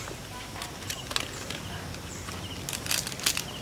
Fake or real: real